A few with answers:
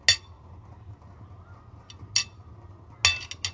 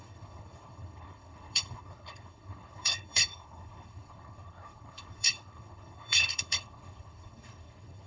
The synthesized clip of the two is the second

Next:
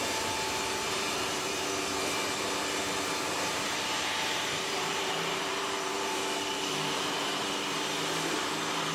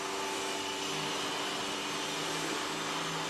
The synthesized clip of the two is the first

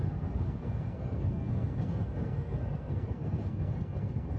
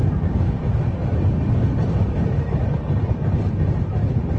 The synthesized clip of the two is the first